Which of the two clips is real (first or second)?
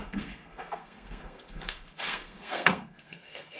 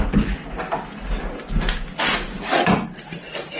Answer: second